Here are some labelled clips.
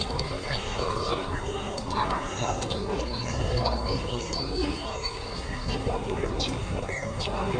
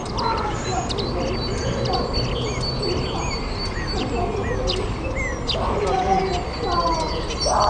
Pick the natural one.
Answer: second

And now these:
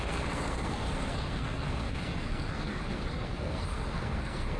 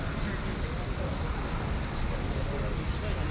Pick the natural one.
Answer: second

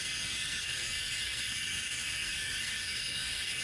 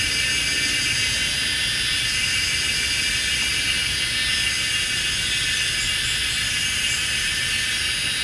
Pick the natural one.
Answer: second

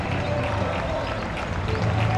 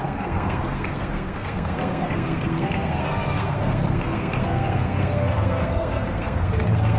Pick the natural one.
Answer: first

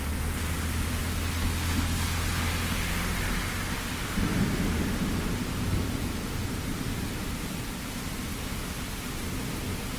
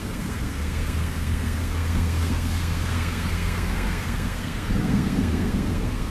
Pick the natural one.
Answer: first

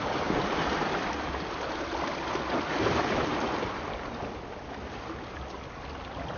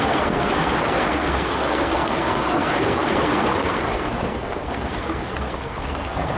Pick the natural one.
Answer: first